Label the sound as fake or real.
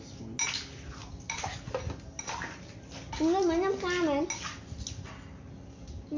real